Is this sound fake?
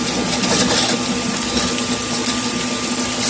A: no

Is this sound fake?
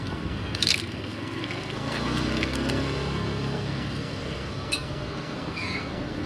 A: yes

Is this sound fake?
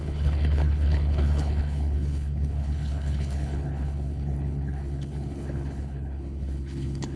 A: yes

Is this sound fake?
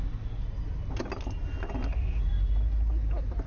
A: no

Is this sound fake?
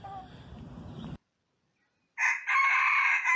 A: no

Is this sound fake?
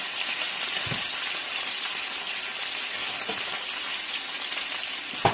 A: no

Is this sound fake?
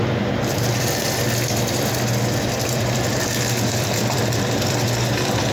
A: yes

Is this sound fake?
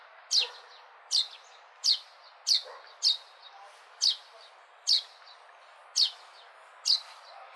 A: no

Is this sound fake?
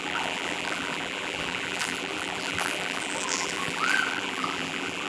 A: yes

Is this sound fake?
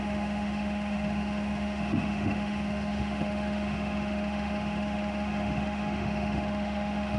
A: yes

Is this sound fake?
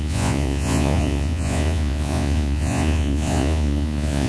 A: yes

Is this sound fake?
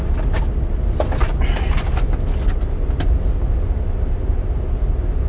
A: no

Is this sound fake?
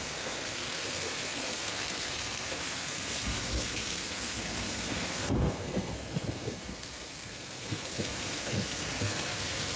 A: yes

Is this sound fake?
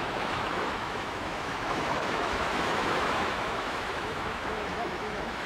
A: yes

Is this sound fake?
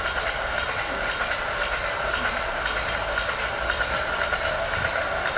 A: no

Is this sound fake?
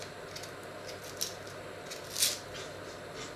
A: no